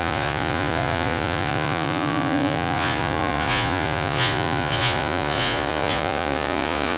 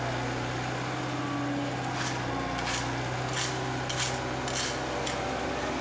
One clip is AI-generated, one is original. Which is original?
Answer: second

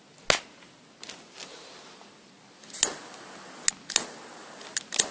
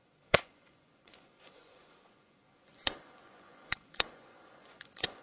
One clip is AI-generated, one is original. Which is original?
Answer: first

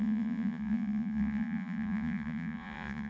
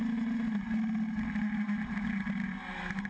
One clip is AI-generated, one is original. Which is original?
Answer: second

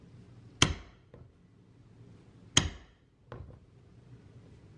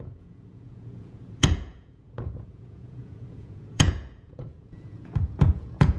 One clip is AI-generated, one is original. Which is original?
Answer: first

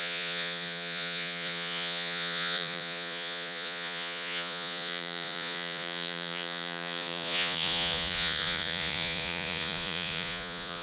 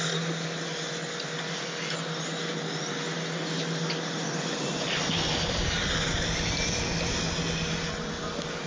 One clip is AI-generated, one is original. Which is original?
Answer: second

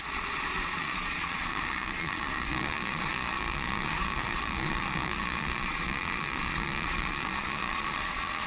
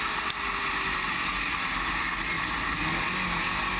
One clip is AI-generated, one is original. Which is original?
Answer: second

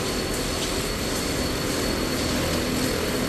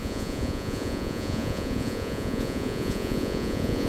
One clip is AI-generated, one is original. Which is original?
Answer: first